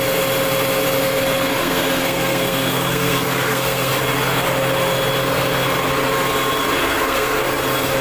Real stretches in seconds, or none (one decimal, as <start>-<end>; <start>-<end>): 0.0-1.6; 3.9-6.8; 7.4-8.0